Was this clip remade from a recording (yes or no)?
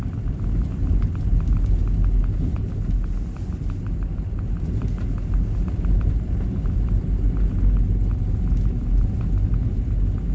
no